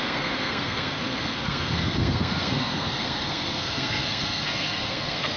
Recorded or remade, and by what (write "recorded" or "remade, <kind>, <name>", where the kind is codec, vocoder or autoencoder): remade, codec, SNAC